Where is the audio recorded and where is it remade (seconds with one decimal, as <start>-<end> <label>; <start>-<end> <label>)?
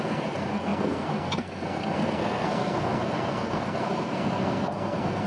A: 0.0-5.3 remade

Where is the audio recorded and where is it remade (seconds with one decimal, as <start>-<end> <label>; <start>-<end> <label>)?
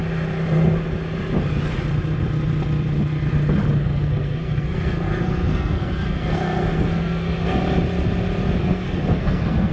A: 0.0-3.8 recorded; 3.8-7.6 remade; 7.6-8.6 recorded; 8.6-9.7 remade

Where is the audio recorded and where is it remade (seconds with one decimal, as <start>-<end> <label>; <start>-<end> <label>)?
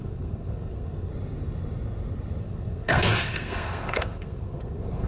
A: 0.0-1.1 remade; 1.1-2.4 recorded; 2.4-5.1 remade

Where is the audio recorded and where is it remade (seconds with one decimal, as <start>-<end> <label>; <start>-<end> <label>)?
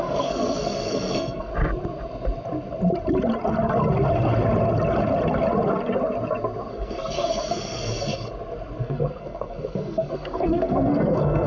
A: 0.0-1.5 remade; 1.5-6.7 recorded; 6.7-7.9 remade; 7.9-8.8 recorded; 8.8-11.5 remade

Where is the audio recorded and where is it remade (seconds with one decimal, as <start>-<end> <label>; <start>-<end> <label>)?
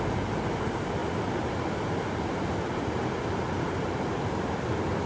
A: 0.0-5.1 recorded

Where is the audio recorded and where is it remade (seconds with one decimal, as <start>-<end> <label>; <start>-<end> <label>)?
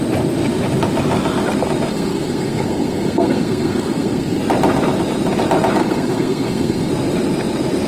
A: 0.0-1.9 recorded; 1.9-4.4 remade; 4.4-5.8 recorded; 5.8-6.9 remade; 6.9-7.9 recorded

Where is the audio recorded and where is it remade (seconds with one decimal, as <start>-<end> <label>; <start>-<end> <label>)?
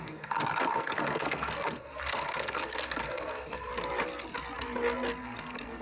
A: 0.0-3.7 remade; 3.7-5.2 recorded; 5.2-5.8 remade